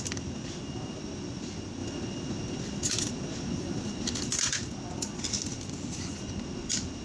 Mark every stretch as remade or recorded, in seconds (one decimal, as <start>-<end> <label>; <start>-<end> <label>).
0.0-5.5 recorded; 5.5-6.1 remade; 6.1-7.0 recorded